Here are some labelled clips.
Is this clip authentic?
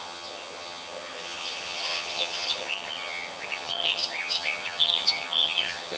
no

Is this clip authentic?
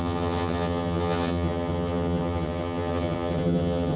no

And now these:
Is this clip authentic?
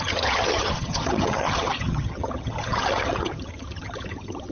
no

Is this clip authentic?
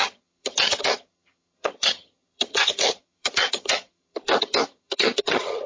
no